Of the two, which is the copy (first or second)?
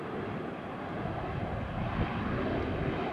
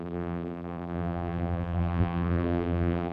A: second